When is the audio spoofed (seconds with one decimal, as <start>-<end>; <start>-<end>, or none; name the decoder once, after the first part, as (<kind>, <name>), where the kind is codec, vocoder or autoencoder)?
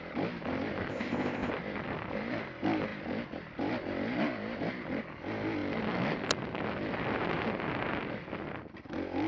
0.9-1.5 (codec, ZipCodec)